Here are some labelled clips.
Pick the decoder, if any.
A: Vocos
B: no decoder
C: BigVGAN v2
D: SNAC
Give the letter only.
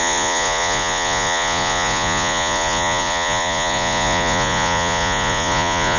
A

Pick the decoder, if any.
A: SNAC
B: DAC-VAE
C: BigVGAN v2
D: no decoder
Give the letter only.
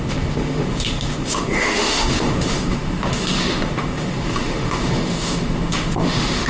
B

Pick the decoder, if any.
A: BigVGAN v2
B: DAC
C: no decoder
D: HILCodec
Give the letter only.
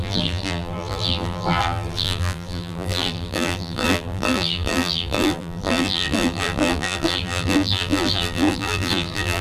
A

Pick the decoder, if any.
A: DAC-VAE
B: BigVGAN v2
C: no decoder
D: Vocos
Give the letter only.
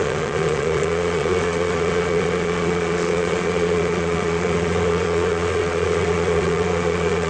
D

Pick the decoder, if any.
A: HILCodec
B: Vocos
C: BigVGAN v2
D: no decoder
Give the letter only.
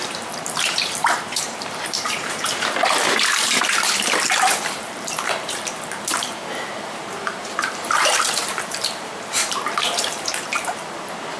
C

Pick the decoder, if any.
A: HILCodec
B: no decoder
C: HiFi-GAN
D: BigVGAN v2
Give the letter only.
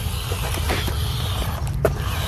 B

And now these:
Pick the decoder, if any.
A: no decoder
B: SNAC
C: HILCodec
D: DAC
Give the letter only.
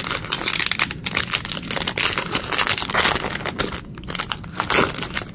A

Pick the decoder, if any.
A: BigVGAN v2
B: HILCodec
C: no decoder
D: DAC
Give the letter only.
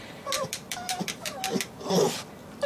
A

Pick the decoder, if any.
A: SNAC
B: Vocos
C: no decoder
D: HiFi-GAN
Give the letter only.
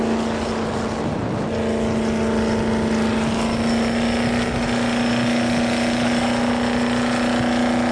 C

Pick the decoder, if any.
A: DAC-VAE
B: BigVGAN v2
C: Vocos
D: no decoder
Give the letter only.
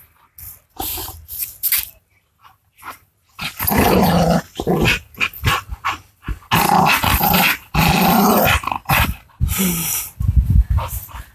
D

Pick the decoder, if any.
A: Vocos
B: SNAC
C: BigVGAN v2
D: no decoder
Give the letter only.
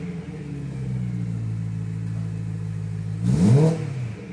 D